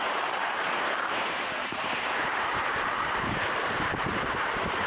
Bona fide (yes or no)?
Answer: no